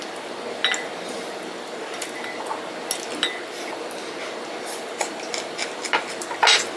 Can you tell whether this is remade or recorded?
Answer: recorded